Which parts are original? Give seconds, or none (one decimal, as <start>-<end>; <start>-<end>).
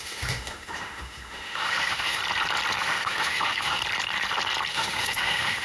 2.2-2.8; 3.8-4.7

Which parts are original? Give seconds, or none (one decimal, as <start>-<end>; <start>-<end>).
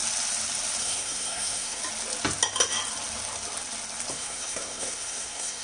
0.0-0.8; 1.8-4.1